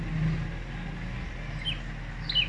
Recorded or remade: recorded